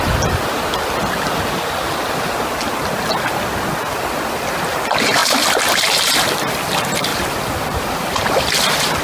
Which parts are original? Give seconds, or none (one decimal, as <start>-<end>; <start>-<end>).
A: 0.0-5.2; 5.7-7.1